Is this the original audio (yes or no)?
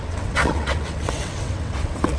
no